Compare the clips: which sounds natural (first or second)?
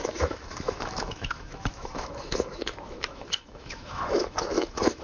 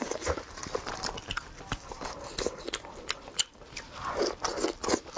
second